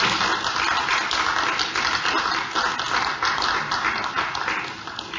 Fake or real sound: real